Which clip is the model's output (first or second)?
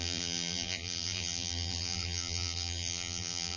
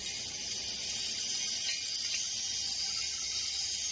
first